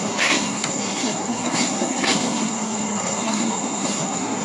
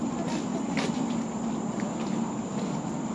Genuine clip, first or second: second